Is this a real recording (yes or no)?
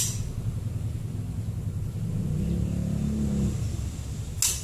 yes